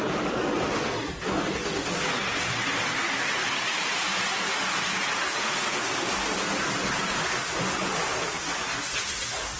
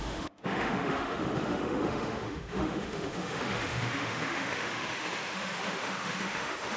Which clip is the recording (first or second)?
first